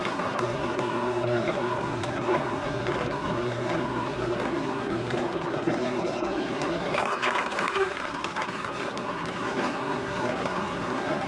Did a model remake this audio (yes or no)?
yes